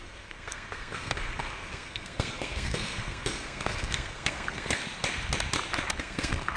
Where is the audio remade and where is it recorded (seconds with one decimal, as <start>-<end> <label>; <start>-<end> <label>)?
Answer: 0.0-4.8 remade; 4.8-6.0 recorded; 6.0-6.6 remade